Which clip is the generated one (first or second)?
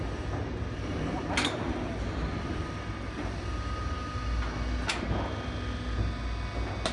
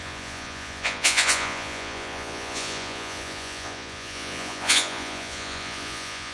second